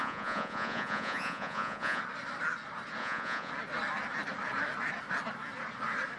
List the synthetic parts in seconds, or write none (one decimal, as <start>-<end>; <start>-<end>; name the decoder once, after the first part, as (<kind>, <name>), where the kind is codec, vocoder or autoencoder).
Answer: 0.0-2.0 (vocoder, Vocos); 3.0-3.5